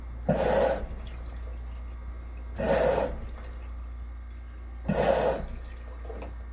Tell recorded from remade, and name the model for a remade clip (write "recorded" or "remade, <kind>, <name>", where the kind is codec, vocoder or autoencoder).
recorded